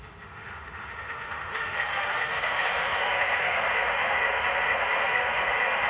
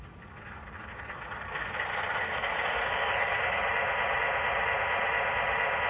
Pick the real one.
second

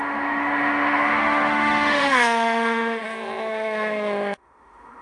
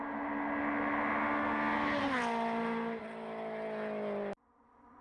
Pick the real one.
second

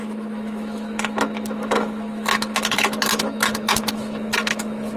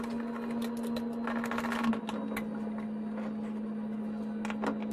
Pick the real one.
second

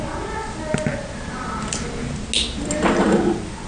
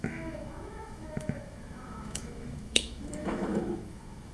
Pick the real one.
first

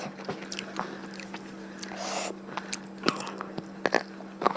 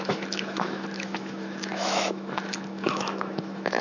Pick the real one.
first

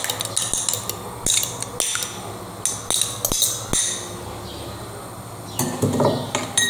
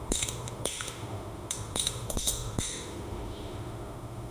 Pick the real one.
first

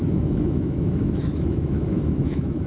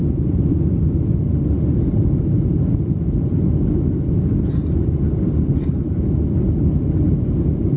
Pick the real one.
second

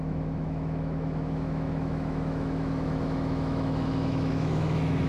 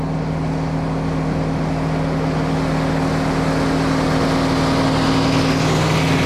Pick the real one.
second